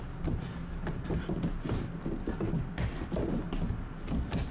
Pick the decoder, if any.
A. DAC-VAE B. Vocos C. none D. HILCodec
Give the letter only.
C